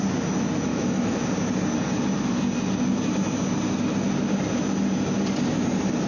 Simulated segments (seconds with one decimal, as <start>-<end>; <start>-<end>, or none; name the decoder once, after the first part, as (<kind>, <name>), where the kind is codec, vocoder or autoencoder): 0.7-1.3 (autoencoder, DAC-VAE)